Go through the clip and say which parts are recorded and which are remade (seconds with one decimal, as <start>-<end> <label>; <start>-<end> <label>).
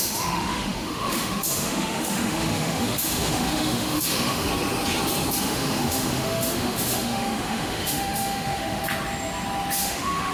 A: 0.0-4.5 remade; 4.5-5.4 recorded; 5.4-8.8 remade; 8.8-9.8 recorded; 9.8-10.3 remade